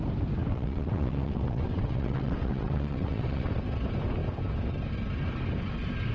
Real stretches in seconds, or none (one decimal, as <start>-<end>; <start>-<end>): 0.0-0.5; 3.5-6.1